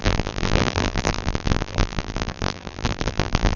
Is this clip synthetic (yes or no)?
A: yes